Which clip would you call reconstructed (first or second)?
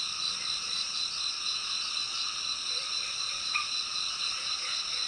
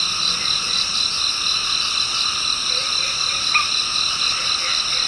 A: first